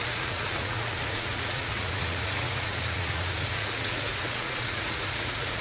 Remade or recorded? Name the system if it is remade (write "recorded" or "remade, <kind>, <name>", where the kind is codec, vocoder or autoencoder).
remade, vocoder, Vocos